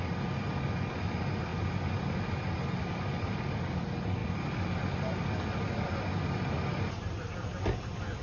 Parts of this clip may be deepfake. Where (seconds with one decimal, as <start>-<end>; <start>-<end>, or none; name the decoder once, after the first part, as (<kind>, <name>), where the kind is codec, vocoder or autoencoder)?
none